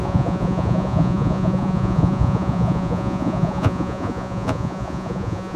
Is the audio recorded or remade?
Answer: remade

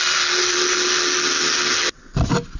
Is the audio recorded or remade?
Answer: recorded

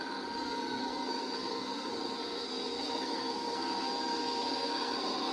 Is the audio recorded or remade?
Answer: remade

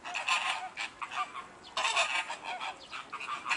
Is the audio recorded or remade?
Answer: recorded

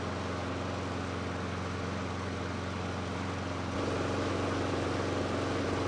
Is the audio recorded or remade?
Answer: recorded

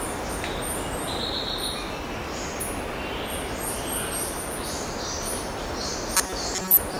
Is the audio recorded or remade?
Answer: recorded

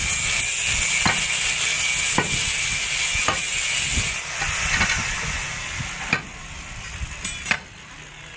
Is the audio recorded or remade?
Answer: recorded